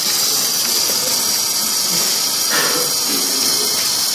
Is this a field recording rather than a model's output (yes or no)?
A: yes